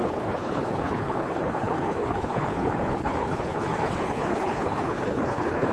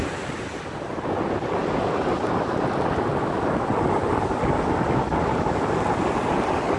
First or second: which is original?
second